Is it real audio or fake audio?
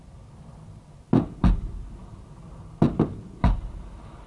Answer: real